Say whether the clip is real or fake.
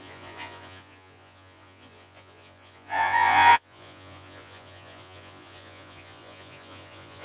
fake